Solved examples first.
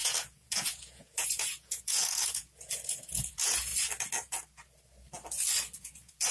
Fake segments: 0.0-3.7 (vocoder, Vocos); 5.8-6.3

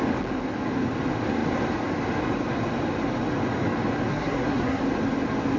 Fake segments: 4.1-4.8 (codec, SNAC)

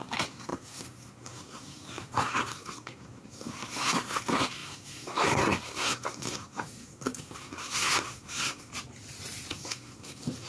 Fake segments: 0.0-8.7 (codec, SNAC); 9.5-10.5

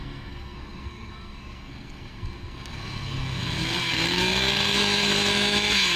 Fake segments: 0.0-6.0 (codec, SNAC)